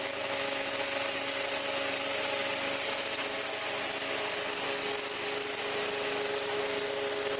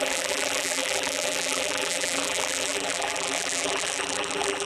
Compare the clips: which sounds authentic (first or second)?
first